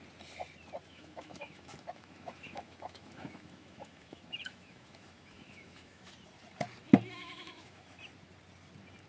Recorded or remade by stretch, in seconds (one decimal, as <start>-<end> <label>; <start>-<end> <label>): 0.0-0.9 recorded; 0.9-6.1 remade; 6.1-7.2 recorded; 7.2-8.0 remade; 8.0-9.1 recorded

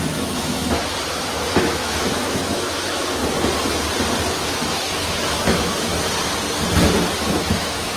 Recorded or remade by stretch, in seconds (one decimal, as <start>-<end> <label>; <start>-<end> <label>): 0.0-0.6 remade; 0.6-1.6 recorded; 1.6-3.2 remade; 3.2-4.3 recorded; 4.3-5.9 remade; 5.9-7.3 recorded; 7.3-8.0 remade

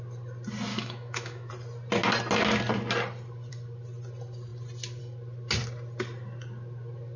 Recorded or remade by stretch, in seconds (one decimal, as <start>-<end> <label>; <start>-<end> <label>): 0.0-0.7 recorded; 0.7-1.5 remade; 1.5-7.2 recorded

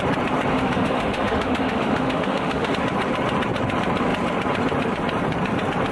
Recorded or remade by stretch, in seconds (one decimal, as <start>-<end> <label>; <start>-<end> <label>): 0.0-0.5 recorded; 0.5-2.7 remade; 2.7-5.9 recorded

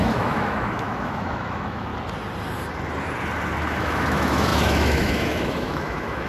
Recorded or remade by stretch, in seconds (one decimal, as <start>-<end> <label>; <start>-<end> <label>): 0.0-1.9 remade; 1.9-3.7 recorded; 3.7-6.3 remade

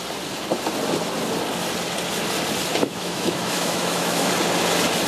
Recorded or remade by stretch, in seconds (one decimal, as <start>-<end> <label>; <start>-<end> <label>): 0.0-2.7 recorded; 2.7-4.3 remade; 4.3-5.1 recorded